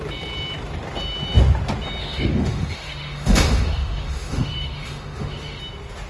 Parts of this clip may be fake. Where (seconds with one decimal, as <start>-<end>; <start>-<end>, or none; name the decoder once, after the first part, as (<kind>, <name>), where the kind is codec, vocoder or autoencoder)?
2.0-5.6 (autoencoder, DAC-VAE)